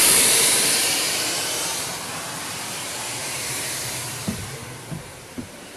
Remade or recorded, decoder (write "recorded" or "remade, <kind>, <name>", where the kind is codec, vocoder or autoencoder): remade, vocoder, BigVGAN v2